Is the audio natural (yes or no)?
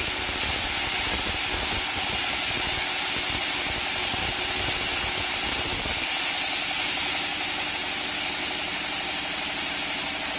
yes